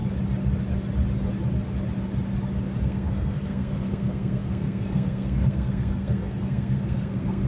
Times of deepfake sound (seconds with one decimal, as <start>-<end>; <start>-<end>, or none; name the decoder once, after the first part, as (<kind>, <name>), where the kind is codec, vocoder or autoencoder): 2.8-7.5 (codec, SNAC)

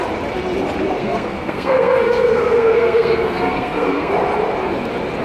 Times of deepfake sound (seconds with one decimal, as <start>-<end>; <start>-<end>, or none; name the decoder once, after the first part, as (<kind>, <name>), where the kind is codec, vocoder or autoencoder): 1.0-4.1 (codec, SNAC)

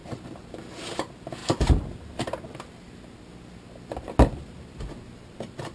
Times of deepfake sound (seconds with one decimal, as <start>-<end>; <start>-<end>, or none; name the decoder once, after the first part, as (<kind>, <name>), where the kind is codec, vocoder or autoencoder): none

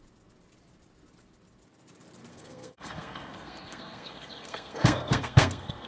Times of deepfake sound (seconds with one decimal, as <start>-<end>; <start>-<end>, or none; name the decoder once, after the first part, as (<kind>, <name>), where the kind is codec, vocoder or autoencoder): 2.3-5.9 (codec, SNAC)